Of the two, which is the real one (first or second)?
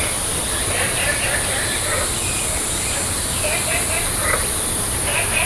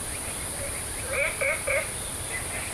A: first